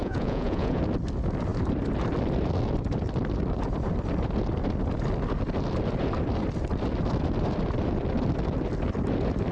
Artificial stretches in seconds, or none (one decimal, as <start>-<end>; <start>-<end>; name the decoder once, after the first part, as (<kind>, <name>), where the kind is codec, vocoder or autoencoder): 0.0-0.8 (vocoder, Vocos)